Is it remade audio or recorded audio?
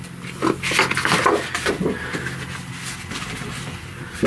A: recorded